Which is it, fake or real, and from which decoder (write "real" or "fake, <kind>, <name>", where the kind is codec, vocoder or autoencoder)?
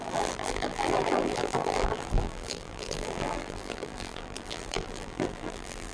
fake, vocoder, BigVGAN v2